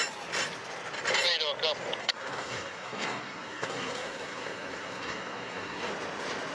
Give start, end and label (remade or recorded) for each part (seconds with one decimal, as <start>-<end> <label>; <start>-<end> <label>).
0.0-2.0 recorded; 2.0-5.9 remade; 5.9-6.5 recorded